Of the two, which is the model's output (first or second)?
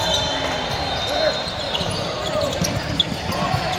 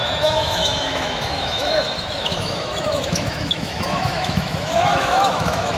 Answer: second